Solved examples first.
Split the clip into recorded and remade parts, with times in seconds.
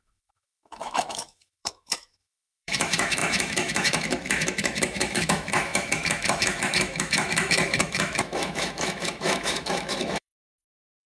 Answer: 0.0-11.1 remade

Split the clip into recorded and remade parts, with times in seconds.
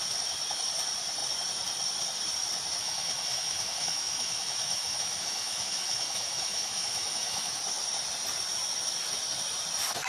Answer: 0.0-2.8 recorded; 2.8-7.6 remade; 7.6-10.1 recorded